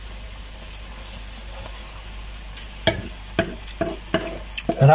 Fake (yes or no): no